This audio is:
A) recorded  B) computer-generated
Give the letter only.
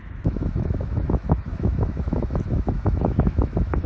B